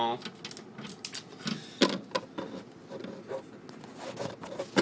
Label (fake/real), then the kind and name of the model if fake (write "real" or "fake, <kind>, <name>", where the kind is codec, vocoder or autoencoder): real